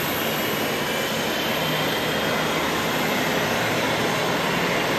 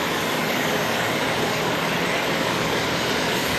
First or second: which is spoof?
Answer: second